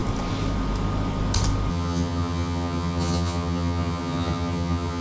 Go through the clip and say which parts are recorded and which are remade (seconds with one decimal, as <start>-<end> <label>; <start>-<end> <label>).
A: 0.0-1.7 recorded; 1.7-5.0 remade

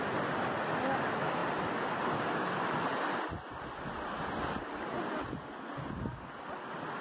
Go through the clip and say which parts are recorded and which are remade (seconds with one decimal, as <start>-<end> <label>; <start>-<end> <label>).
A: 0.0-7.0 recorded

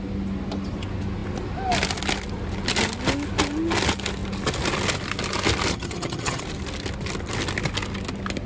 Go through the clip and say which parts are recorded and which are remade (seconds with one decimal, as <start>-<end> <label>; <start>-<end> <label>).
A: 0.0-5.7 recorded; 5.7-6.4 remade; 6.4-8.5 recorded

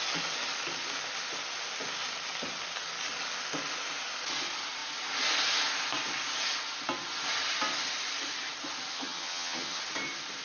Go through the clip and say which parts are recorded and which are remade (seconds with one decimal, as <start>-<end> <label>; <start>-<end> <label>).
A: 0.0-8.9 recorded; 8.9-9.8 remade; 9.8-10.4 recorded

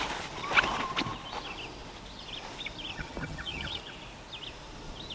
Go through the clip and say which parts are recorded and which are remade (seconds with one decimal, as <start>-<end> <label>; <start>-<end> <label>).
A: 0.0-2.9 recorded; 2.9-3.8 remade; 3.8-5.1 recorded

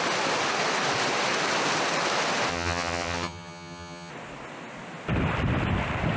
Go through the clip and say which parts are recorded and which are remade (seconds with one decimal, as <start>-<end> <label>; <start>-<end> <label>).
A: 0.0-2.5 recorded; 2.5-4.1 remade; 4.1-6.2 recorded

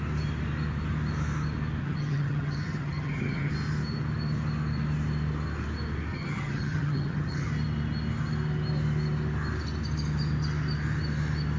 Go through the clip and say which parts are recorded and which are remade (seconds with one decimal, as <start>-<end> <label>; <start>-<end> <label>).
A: 0.0-1.8 recorded; 1.8-3.5 remade; 3.5-6.1 recorded; 6.1-7.5 remade; 7.5-11.6 recorded